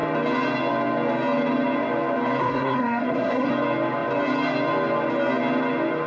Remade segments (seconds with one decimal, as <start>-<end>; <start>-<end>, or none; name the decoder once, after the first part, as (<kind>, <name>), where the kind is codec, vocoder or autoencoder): 2.4-3.5 (codec, SNAC)